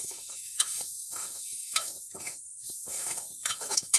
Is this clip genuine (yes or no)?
no